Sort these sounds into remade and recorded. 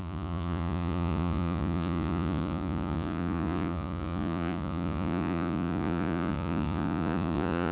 remade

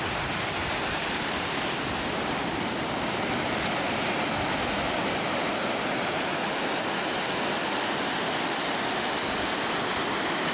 recorded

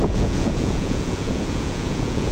remade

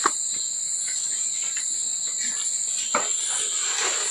recorded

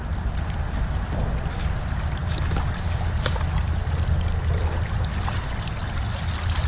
recorded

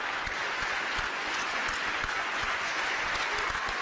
remade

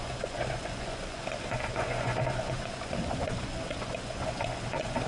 remade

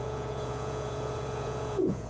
remade